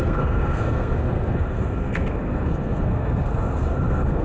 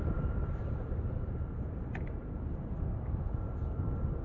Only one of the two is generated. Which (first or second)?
first